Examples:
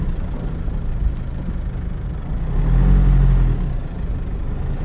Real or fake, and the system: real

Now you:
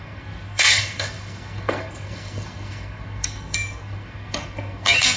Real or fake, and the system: fake, codec, SNAC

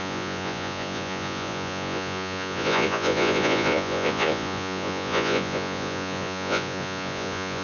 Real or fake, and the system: fake, vocoder, Vocos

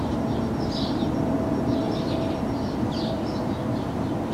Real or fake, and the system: real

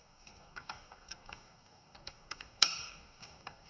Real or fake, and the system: fake, codec, DAC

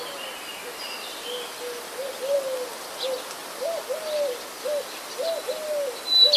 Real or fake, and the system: real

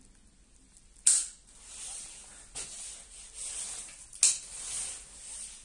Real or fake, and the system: real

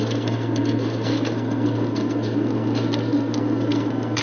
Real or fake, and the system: fake, codec, SNAC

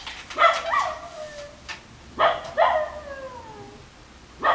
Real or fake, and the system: real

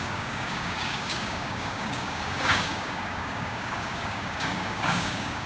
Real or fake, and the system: fake, codec, DAC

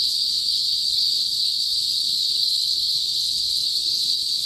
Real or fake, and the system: fake, codec, HILCodec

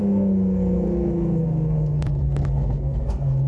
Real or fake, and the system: fake, codec, SNAC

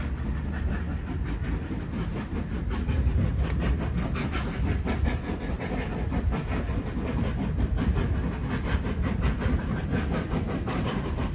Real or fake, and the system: real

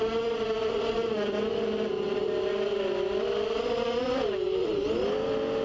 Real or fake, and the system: real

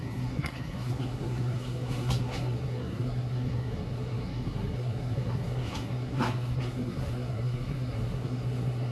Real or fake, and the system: fake, codec, SNAC